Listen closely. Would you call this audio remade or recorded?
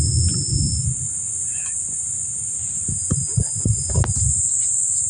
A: recorded